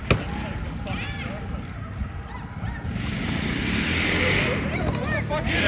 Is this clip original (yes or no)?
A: yes